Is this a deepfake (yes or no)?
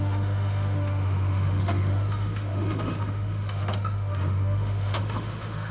yes